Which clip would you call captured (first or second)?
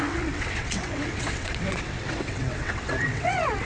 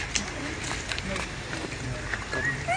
second